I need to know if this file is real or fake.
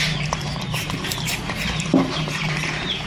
fake